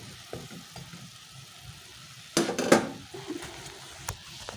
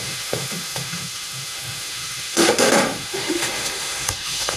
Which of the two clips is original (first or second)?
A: first